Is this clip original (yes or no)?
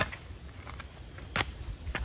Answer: yes